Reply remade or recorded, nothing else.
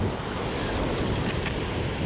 recorded